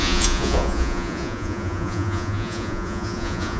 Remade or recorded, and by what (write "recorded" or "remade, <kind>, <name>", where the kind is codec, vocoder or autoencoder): remade, vocoder, Vocos